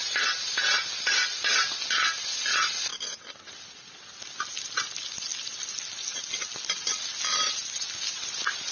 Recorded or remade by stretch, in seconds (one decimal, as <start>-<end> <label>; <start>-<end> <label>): 0.0-8.7 recorded